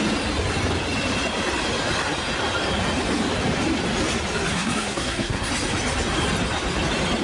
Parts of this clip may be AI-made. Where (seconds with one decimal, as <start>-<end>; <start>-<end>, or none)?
4.5-5.5